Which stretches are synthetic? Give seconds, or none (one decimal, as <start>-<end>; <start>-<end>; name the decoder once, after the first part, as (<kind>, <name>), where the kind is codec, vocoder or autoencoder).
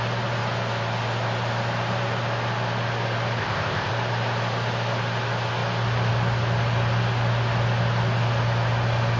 3.4-3.9 (codec, ZipCodec)